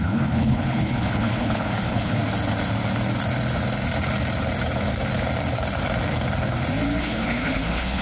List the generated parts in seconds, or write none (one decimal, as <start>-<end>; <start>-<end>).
0.0-2.2; 7.0-8.0